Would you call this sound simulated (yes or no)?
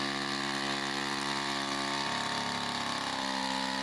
no